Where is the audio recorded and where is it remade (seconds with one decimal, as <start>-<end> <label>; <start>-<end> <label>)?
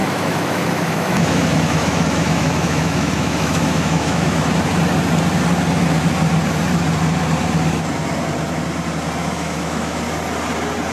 0.0-4.5 remade; 4.5-9.2 recorded; 9.2-10.0 remade; 10.0-10.9 recorded